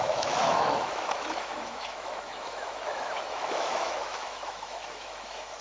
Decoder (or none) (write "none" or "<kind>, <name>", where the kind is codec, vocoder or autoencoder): autoencoder, DAC-VAE